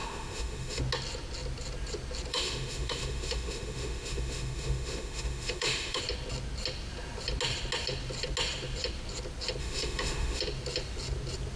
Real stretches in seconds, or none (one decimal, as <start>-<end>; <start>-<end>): 0.8-2.3; 6.0-9.6; 10.4-11.6